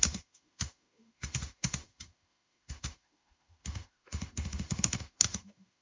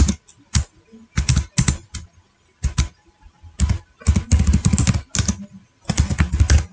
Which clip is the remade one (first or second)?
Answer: first